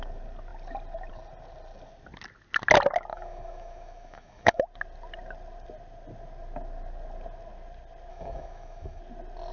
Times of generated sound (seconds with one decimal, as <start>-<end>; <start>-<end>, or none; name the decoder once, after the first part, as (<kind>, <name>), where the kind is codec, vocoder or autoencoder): 3.1-4.6 (autoencoder, DAC-VAE); 8.1-9.0